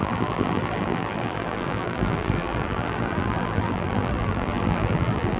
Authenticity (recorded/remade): remade